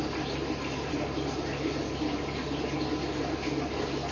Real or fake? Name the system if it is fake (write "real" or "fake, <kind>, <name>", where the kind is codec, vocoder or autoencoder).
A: real